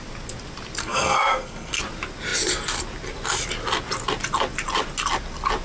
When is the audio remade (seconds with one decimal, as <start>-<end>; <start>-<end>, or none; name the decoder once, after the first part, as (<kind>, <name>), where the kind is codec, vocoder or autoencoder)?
0.8-1.8 (codec, SNAC)